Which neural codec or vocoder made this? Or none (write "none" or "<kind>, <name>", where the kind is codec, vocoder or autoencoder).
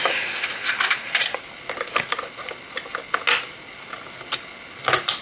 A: none